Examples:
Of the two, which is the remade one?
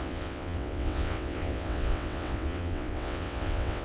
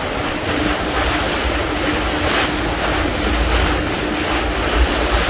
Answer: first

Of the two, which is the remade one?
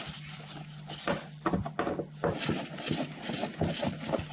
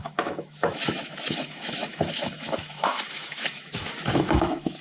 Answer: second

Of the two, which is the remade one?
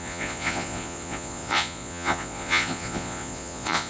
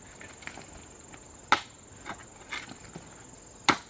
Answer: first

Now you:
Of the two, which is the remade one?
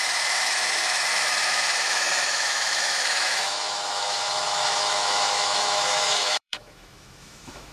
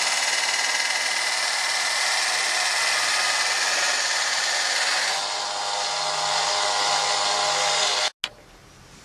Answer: first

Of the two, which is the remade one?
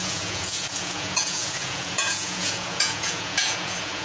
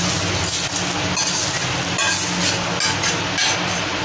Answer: first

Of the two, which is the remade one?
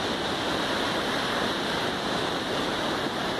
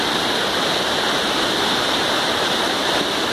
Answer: first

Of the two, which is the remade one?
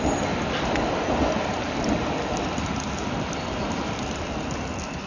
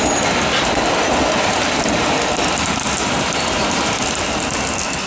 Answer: first